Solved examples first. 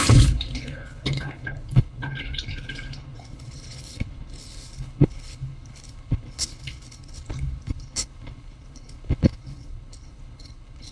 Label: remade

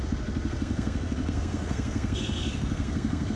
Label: remade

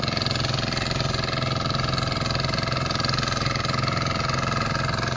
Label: recorded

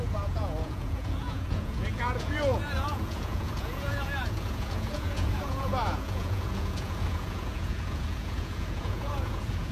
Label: remade